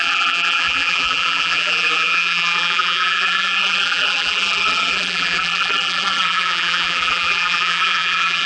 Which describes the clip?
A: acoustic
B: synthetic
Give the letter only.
B